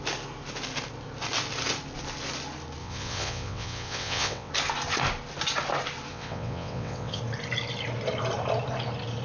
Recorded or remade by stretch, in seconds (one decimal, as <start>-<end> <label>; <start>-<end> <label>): 0.0-2.8 recorded; 2.8-4.5 remade; 4.5-6.1 recorded; 6.1-7.2 remade; 7.2-9.2 recorded

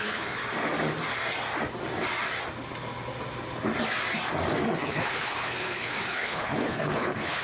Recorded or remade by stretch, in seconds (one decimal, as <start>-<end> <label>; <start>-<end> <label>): 0.0-0.4 remade; 0.4-4.8 recorded; 4.8-7.4 remade